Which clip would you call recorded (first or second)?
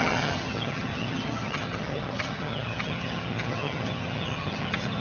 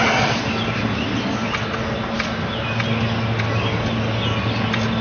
second